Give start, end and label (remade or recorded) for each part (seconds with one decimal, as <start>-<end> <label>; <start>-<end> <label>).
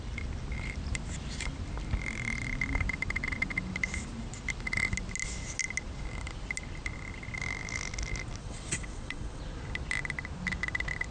0.0-8.4 recorded; 8.4-9.4 remade; 9.4-11.1 recorded